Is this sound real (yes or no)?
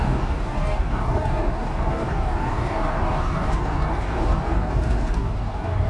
no